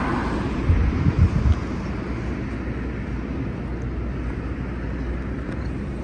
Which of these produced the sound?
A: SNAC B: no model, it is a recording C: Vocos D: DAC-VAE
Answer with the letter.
B